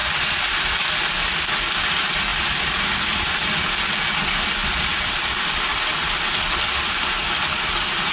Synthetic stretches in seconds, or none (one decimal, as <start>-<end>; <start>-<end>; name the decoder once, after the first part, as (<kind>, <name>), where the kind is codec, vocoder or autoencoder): 2.3-3.5 (vocoder, BigVGAN v2); 4.6-8.1